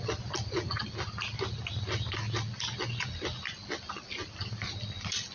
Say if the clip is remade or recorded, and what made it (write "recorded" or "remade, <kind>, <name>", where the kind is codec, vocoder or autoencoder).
recorded